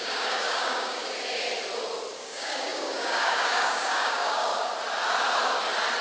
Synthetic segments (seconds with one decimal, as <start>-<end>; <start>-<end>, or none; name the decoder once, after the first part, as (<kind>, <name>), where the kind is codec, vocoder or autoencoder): 0.0-1.0 (codec, DAC); 2.1-4.5